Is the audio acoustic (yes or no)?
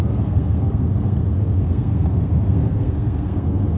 no